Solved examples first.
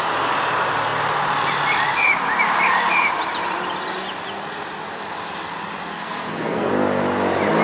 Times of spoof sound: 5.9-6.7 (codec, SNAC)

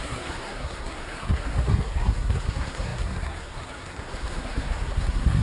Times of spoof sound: 0.0-5.4 (codec, SNAC)

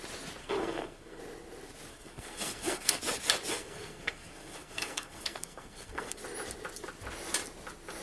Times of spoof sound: 0.4-1.2 (codec, SNAC); 1.9-3.0; 3.5-6.2

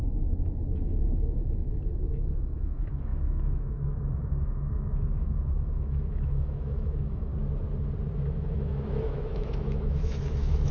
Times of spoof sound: 0.0-7.3 (autoencoder, DAC-VAE); 8.3-10.7

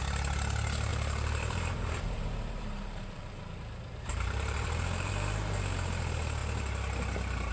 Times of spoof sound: 0.9-5.1 (vocoder, BigVGAN v2)

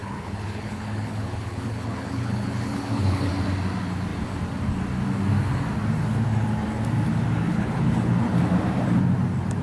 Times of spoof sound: 0.0-3.3 (codec, HILCodec); 7.5-8.4